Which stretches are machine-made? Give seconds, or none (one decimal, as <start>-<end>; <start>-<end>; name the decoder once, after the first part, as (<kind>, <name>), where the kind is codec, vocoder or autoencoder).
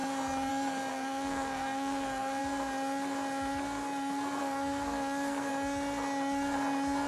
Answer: 0.9-2.4 (codec, SNAC); 4.4-5.5